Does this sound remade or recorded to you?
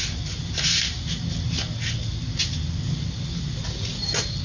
recorded